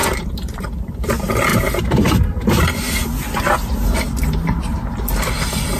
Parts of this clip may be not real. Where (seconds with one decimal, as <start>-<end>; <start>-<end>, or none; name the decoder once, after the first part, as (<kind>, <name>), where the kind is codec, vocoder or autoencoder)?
0.0-0.9 (vocoder, BigVGAN v2); 1.5-2.5